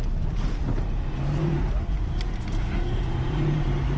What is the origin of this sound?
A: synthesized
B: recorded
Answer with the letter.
A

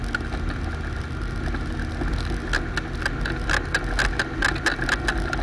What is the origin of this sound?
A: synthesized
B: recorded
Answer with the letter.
B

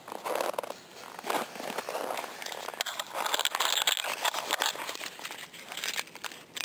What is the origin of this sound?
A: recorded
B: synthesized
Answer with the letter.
A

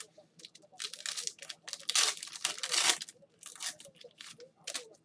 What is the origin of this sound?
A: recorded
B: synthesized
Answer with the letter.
A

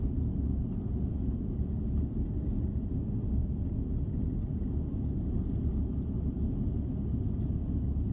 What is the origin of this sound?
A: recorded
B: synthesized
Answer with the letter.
A